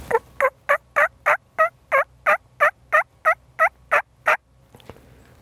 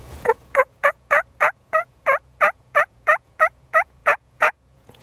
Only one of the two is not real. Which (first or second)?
second